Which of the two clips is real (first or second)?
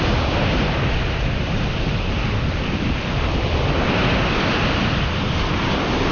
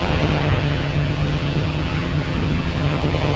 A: first